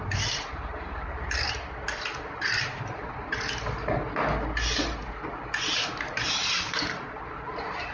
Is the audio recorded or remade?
recorded